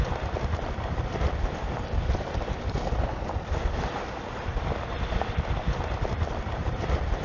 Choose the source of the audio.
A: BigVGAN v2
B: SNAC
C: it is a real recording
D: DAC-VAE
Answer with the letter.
A